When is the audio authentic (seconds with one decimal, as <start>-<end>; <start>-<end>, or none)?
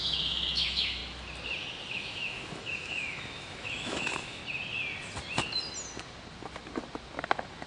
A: 1.0-1.9; 4.4-7.7